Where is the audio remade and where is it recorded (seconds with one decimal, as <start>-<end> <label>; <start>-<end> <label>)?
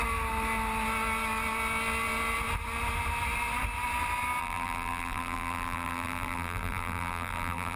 0.0-4.4 recorded; 4.4-7.8 remade